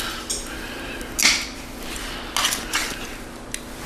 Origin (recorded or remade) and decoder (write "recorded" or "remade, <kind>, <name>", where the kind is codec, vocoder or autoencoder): recorded